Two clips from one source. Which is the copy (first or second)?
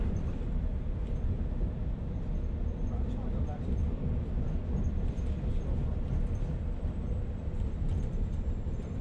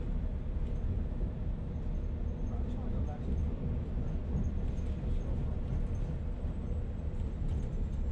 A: first